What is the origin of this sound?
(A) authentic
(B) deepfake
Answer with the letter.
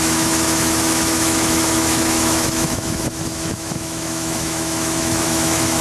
B